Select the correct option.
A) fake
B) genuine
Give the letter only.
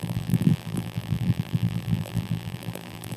A